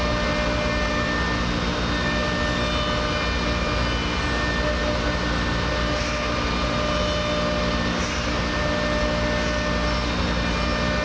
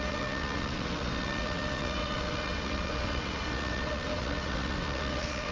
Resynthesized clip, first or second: second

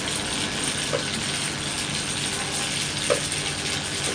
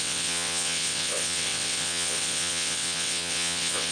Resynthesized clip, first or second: second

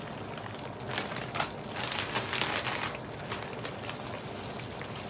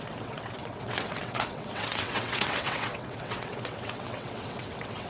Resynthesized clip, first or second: second